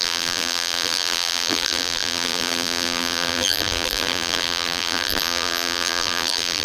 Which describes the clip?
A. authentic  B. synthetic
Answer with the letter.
B